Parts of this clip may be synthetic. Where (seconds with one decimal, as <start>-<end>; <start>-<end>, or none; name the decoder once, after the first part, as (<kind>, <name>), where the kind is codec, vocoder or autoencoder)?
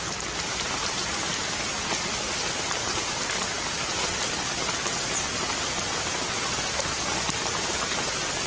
none